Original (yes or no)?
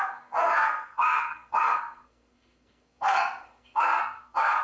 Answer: no